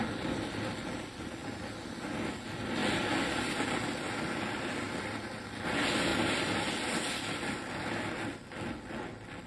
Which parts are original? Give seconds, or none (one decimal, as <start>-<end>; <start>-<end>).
0.0-6.1; 6.7-9.5